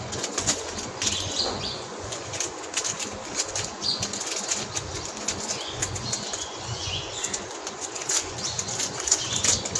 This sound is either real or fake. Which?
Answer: fake